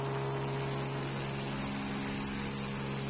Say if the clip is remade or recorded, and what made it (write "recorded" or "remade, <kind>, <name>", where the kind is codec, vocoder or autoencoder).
recorded